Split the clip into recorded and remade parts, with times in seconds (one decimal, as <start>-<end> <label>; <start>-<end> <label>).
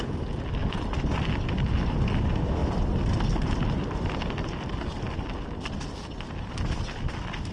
0.0-7.5 recorded